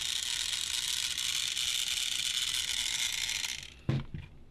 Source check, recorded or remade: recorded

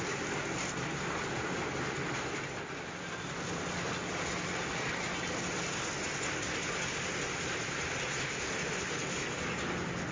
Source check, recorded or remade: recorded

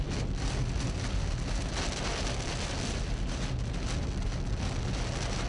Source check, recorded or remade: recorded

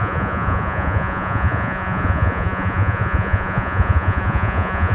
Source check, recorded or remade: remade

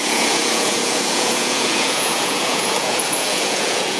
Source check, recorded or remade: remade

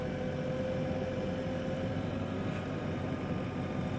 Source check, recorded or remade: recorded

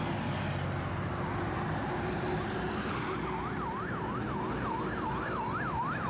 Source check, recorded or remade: recorded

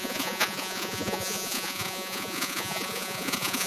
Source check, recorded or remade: remade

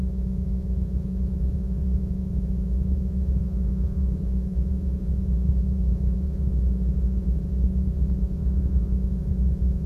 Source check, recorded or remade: remade